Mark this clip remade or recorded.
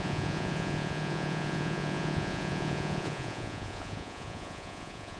remade